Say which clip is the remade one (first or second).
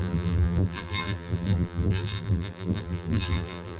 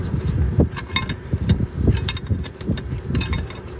first